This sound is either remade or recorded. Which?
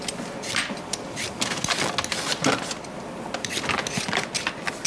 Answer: recorded